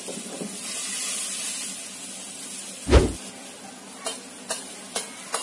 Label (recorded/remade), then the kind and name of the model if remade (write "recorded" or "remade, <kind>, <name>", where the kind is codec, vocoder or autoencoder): recorded